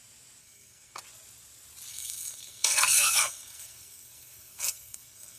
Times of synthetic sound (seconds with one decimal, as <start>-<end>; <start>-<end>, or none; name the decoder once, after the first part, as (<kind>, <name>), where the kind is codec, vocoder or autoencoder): 0.4-1.0 (codec, SNAC); 1.9-5.4